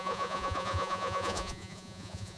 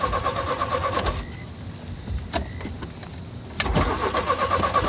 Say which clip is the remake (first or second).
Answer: first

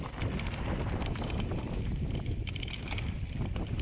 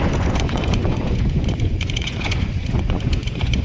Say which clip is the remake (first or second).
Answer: second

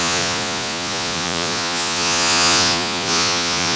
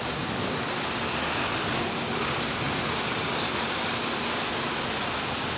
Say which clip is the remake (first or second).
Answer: first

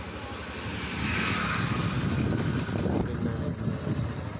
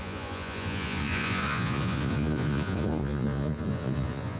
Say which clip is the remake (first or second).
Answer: second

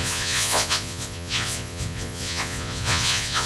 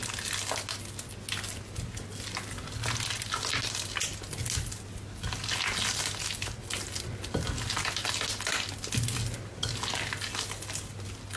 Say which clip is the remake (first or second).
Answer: first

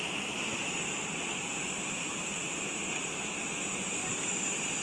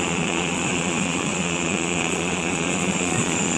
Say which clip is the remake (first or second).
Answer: second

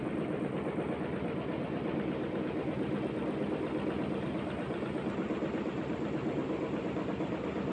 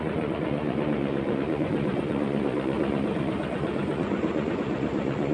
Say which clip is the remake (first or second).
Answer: second